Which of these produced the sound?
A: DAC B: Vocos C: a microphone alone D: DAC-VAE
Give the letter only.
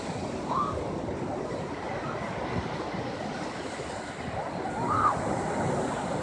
C